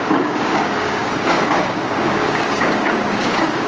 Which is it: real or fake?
fake